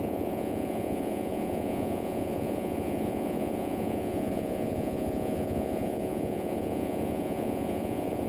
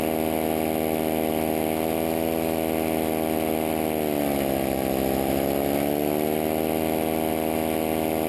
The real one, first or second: second